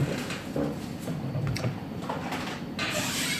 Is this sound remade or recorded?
recorded